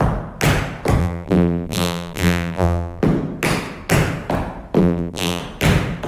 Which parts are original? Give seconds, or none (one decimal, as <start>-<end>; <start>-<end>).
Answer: 0.0-1.0; 3.0-4.8; 5.4-6.1